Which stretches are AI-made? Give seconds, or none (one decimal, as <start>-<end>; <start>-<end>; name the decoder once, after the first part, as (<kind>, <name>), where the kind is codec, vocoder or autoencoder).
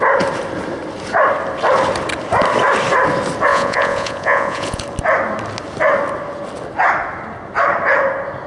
3.5-4.8 (vocoder, Vocos)